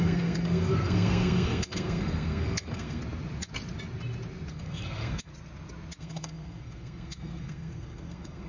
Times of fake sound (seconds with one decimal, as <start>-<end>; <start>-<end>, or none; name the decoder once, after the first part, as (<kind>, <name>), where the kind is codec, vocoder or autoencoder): 0.0-3.0 (codec, SNAC); 4.5-5.3; 6.0-8.5